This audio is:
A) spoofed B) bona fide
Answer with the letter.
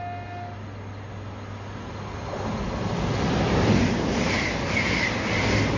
B